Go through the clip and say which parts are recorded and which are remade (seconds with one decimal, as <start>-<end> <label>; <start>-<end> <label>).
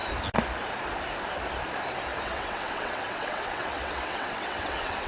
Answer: 0.0-2.1 recorded; 2.1-5.1 remade